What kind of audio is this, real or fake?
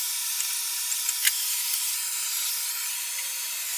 real